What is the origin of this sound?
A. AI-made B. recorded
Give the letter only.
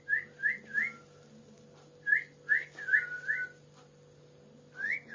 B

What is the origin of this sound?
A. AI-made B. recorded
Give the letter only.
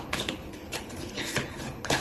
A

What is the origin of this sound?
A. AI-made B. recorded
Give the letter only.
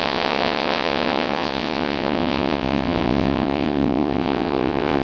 A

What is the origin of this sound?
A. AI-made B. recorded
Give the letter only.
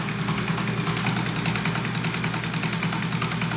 B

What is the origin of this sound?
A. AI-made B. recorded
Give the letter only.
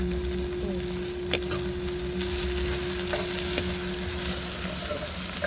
B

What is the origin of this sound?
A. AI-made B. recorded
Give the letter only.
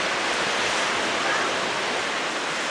B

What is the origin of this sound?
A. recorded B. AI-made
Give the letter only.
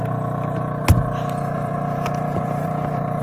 B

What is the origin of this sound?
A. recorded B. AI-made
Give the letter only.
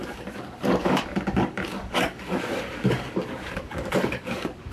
B